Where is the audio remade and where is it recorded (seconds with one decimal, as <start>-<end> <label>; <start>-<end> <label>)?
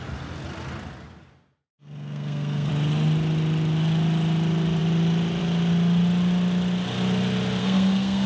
0.0-1.7 recorded; 1.7-2.7 remade; 2.7-7.6 recorded; 7.6-8.3 remade